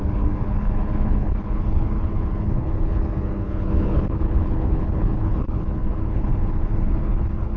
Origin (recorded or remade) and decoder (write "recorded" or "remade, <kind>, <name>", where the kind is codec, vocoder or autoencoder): remade, codec, HILCodec